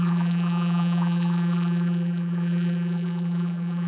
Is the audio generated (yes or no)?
yes